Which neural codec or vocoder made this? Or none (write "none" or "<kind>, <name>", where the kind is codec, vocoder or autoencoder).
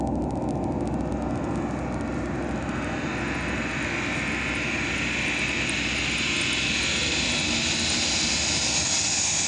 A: none